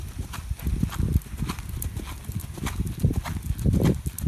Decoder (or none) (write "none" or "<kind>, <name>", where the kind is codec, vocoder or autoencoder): none